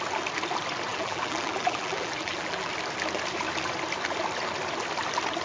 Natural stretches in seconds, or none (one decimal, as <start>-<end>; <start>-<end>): 0.0-0.9; 2.7-5.4